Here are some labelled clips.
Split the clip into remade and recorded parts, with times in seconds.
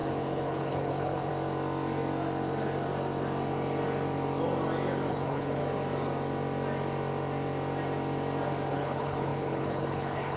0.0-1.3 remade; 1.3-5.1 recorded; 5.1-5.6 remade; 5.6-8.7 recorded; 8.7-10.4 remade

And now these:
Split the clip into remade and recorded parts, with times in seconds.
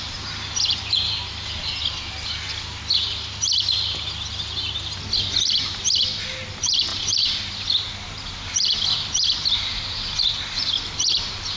0.0-11.6 recorded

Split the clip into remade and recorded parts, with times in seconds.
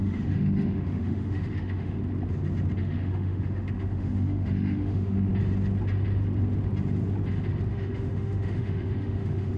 0.0-2.0 remade; 2.0-2.8 recorded; 2.8-5.3 remade; 5.3-7.7 recorded; 7.7-9.6 remade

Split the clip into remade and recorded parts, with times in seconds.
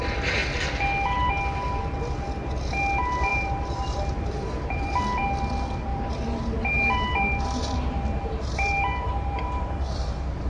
0.0-3.3 recorded; 3.3-5.0 remade; 5.0-5.9 recorded; 5.9-10.5 remade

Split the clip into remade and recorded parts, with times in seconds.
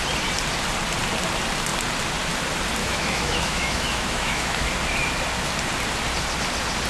0.0-2.8 recorded; 2.8-4.7 remade; 4.7-6.9 recorded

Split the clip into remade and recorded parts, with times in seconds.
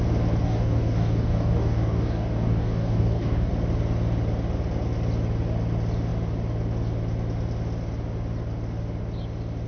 0.0-0.4 recorded; 0.4-3.5 remade; 3.5-9.7 recorded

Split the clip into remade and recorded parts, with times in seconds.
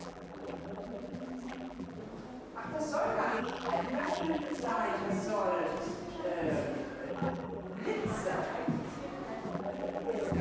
0.0-2.0 remade; 2.0-3.4 recorded; 3.4-4.7 remade; 4.7-7.1 recorded; 7.1-7.8 remade; 7.8-9.5 recorded; 9.5-10.4 remade